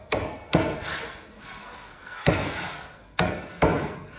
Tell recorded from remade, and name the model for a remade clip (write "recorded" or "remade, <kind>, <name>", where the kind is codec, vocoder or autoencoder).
remade, codec, SNAC